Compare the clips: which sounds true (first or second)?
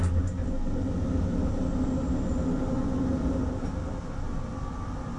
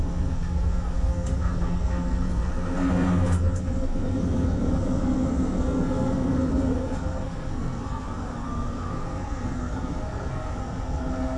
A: first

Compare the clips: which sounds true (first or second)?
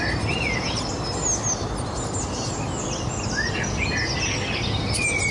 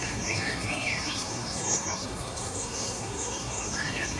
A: first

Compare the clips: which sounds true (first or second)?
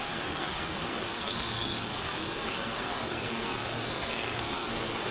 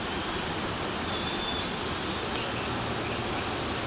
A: second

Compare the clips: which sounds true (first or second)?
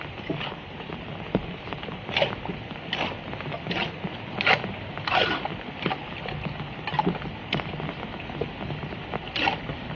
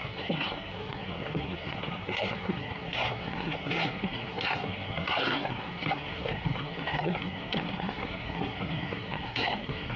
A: first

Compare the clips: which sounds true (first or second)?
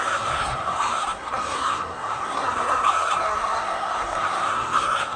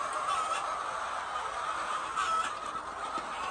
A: second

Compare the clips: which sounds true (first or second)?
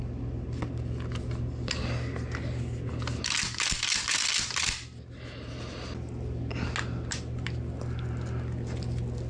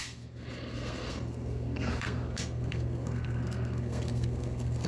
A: first